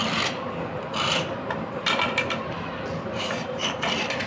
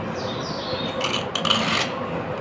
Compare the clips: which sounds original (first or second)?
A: second